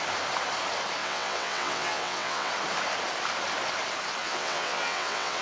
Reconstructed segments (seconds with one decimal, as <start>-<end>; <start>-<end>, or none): 1.0-2.5; 4.2-5.4